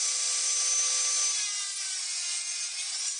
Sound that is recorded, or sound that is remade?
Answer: recorded